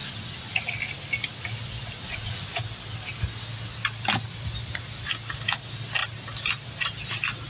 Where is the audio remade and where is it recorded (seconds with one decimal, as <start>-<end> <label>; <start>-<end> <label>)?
0.0-0.7 remade; 0.7-2.0 recorded; 2.0-2.6 remade; 2.6-7.5 recorded